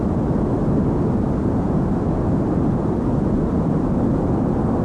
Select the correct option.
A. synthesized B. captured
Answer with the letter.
B